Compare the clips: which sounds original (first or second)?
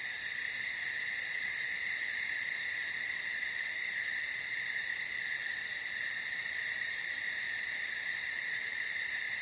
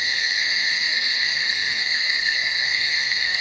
first